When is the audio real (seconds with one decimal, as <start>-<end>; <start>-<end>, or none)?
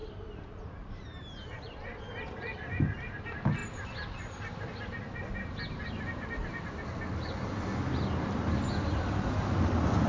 0.0-10.1